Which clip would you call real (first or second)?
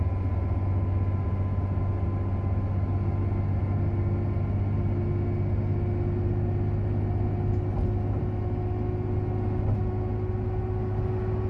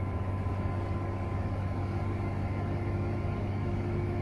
first